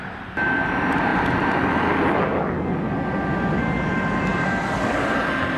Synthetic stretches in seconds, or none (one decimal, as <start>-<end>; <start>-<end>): none